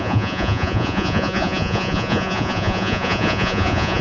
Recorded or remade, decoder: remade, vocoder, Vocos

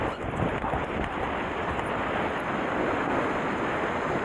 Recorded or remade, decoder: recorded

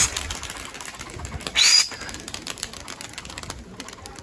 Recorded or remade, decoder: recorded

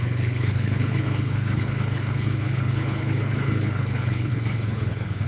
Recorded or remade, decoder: remade, codec, HILCodec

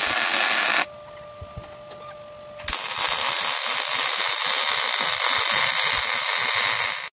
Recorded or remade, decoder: recorded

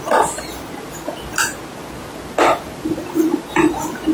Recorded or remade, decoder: recorded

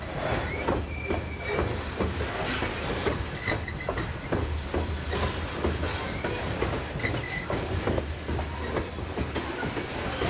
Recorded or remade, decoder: recorded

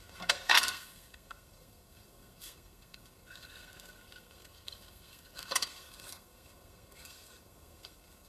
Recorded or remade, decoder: remade, codec, SNAC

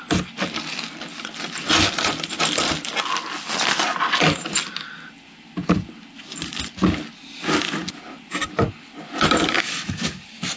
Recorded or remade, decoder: recorded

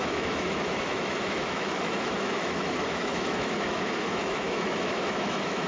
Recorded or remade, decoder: remade, autoencoder, DAC-VAE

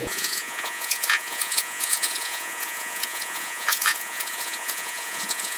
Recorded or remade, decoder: remade, vocoder, Vocos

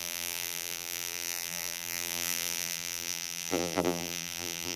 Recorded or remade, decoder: remade, vocoder, BigVGAN v2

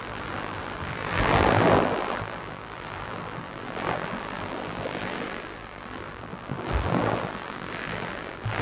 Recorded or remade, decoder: remade, vocoder, BigVGAN v2